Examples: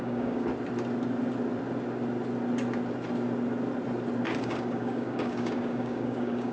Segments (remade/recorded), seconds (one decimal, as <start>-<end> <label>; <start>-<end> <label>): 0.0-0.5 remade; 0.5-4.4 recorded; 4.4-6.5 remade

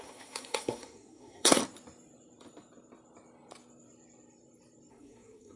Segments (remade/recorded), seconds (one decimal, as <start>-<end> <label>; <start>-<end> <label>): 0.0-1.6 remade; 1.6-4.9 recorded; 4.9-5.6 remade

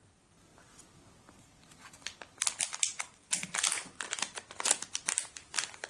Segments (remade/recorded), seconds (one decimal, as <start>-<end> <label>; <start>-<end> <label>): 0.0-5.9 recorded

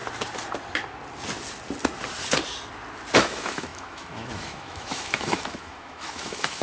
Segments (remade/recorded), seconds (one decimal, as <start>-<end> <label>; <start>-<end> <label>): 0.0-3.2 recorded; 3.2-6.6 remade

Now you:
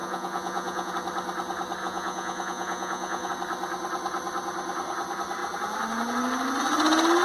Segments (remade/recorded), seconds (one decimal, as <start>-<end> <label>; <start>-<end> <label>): 0.0-0.9 remade; 0.9-1.8 recorded; 1.8-3.3 remade; 3.3-7.2 recorded

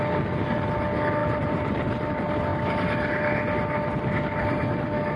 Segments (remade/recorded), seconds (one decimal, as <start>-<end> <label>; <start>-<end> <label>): 0.0-1.2 recorded; 1.2-2.1 remade; 2.1-5.2 recorded

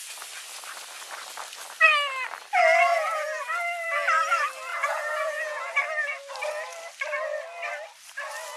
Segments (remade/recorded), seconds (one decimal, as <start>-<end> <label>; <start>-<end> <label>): 0.0-2.9 recorded; 2.9-3.4 remade; 3.4-4.7 recorded; 4.7-5.7 remade; 5.7-8.6 recorded

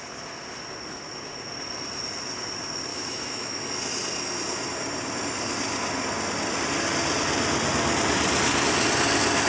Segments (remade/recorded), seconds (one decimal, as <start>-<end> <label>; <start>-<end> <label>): 0.0-2.9 recorded; 2.9-3.7 remade; 3.7-9.5 recorded